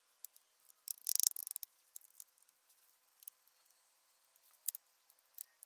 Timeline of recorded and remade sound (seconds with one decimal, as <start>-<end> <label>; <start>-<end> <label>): 0.0-5.7 recorded